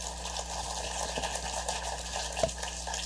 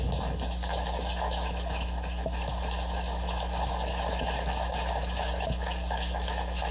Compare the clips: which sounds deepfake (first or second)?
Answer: second